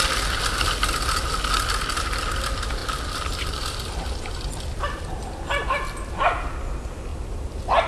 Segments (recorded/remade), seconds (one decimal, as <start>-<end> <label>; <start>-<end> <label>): 0.0-2.8 recorded; 2.8-5.0 remade; 5.0-7.9 recorded